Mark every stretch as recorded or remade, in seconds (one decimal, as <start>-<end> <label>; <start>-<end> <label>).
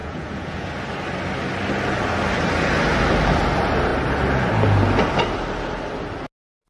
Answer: 0.0-0.7 remade; 0.7-6.7 recorded